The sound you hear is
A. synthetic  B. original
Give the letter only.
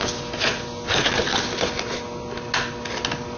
B